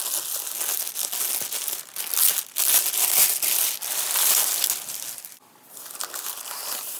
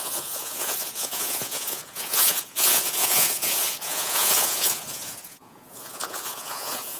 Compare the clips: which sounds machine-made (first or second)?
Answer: second